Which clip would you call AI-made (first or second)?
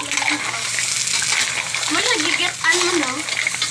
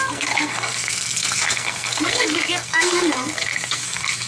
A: second